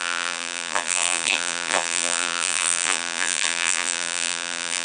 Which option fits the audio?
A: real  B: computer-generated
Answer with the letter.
B